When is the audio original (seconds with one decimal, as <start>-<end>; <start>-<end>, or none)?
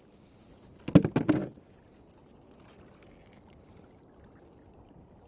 0.0-5.3